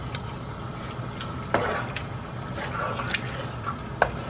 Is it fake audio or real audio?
real